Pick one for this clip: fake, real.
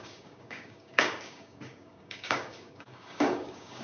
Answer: fake